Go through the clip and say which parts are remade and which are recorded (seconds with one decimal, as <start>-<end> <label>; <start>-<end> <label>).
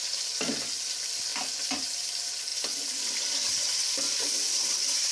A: 0.0-1.3 recorded; 1.3-2.0 remade; 2.0-2.5 recorded; 2.5-5.1 remade